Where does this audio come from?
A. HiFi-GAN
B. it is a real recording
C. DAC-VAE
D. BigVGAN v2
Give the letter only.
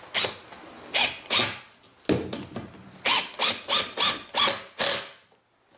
B